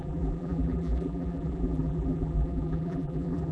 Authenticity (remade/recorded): remade